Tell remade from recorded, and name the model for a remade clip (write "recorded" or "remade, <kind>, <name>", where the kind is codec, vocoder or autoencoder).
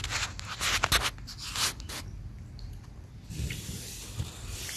recorded